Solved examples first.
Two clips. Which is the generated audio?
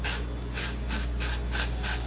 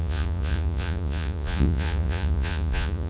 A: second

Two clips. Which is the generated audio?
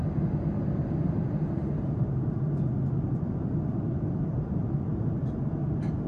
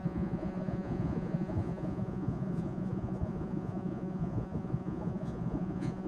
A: second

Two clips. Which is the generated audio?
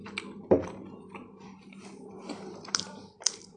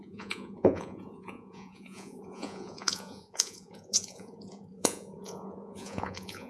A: second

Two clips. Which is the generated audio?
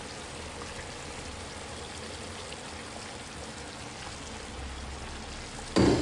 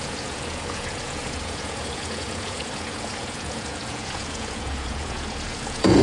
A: second